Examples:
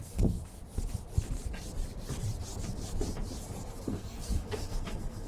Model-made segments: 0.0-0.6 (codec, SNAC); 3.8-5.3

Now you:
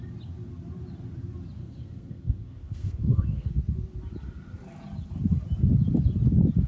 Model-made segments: 1.6-3.5 (codec, SNAC)

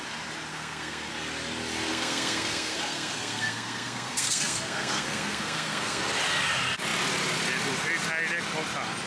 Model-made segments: 0.5-1.1 (codec, SNAC); 1.9-6.0

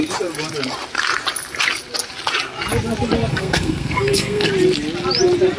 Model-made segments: 3.3-4.5 (codec, SNAC)

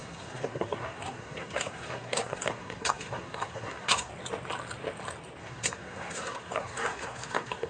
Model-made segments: 0.0-4.1 (codec, SNAC); 5.4-7.7

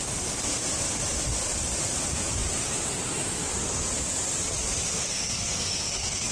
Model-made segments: 4.9-6.3 (codec, SNAC)